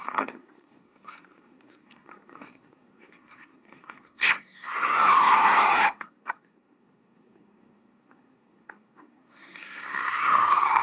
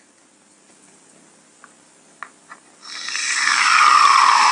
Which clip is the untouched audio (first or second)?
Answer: second